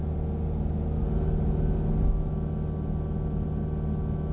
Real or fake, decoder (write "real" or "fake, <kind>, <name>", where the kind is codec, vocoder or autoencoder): real